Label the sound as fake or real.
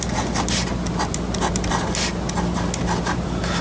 real